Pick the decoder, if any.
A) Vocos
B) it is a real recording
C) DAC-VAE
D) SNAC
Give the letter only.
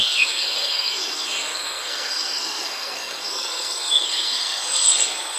D